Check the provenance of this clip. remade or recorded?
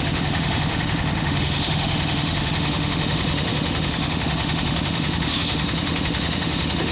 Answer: remade